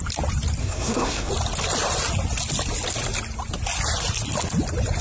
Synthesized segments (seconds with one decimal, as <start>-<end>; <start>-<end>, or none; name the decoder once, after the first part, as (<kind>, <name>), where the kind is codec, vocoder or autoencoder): 0.6-1.3 (codec, SNAC)